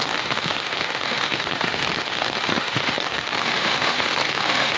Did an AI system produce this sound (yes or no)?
yes